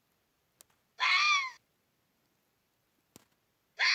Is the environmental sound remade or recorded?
recorded